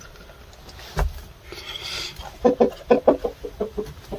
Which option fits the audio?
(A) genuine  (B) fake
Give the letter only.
A